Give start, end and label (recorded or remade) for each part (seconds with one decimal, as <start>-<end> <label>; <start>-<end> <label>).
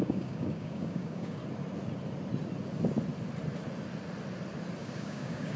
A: 0.0-1.4 remade; 1.4-4.8 recorded; 4.8-5.6 remade